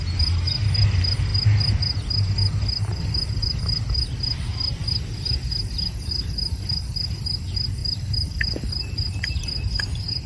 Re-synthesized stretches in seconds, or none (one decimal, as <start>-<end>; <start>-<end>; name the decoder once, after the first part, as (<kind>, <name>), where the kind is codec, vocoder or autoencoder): 7.8-9.3 (vocoder, BigVGAN v2)